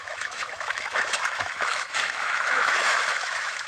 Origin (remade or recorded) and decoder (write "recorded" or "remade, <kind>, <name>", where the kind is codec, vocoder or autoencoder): remade, autoencoder, DAC-VAE